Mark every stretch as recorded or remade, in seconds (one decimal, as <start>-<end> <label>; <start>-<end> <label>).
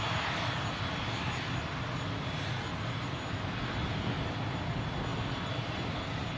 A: 0.0-6.4 recorded